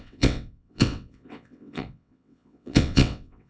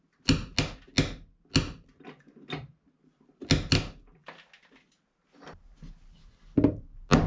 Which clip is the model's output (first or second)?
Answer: first